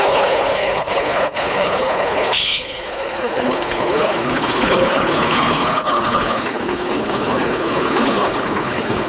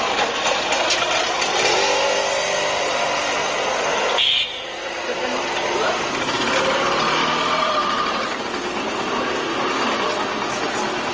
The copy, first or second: first